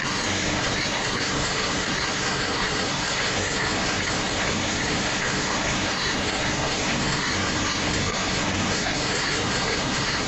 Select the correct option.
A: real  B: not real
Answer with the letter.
B